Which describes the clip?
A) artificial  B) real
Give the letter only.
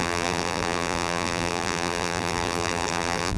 A